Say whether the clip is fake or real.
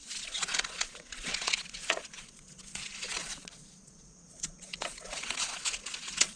fake